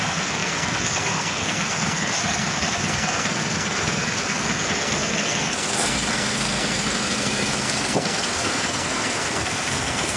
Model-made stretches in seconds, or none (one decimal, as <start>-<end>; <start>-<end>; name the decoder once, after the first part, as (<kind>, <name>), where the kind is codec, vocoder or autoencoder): 0.0-10.2 (codec, SNAC)